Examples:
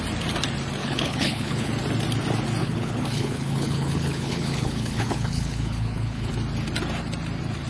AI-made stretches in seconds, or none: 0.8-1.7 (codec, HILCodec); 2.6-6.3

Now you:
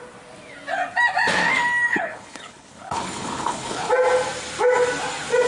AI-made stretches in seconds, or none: 1.9-3.9 (codec, HILCodec)

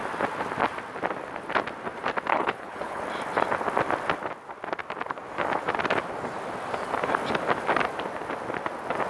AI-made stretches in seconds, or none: 2.3-3.0 (codec, HILCodec)